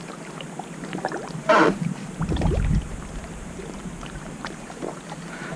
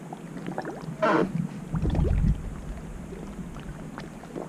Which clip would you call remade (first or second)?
first